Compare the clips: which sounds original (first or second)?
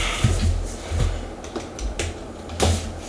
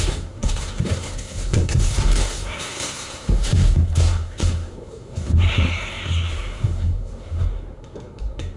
first